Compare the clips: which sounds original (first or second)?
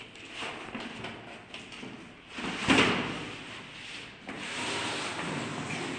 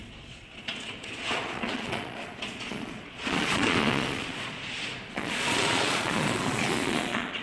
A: first